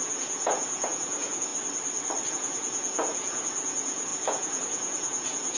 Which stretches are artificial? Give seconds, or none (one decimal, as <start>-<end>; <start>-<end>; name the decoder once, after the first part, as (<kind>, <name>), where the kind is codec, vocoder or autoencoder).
0.0-1.5 (vocoder, Vocos); 2.3-5.6